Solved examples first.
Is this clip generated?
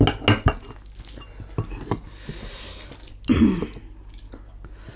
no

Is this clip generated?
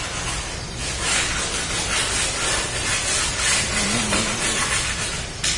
no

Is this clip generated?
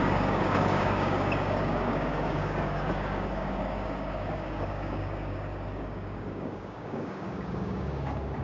yes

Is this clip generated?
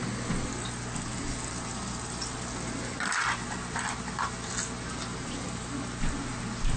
no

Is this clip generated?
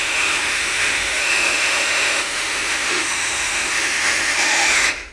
yes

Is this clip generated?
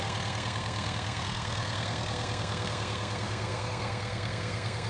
yes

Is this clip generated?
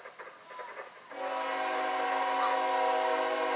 no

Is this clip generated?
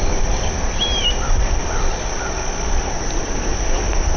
no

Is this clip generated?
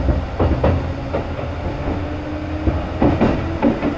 no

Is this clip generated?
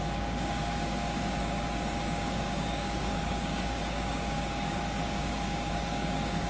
yes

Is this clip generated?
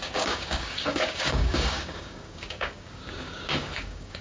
yes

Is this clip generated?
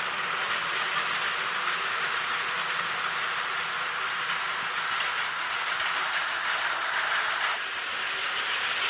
no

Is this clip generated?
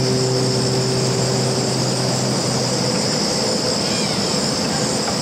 no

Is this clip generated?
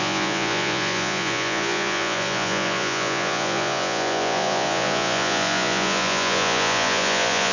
yes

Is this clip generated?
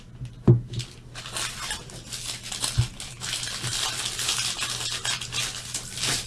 no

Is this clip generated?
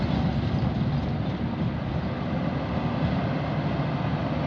no